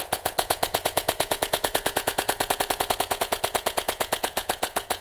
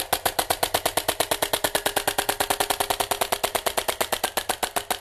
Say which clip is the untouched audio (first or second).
second